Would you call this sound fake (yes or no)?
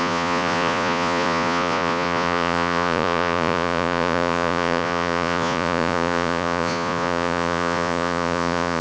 yes